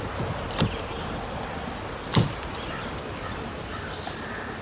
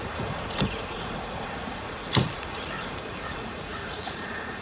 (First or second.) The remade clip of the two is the second